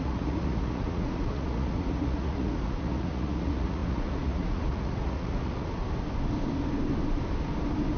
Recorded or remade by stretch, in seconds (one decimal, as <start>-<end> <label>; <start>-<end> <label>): 0.0-5.8 remade; 5.8-8.0 recorded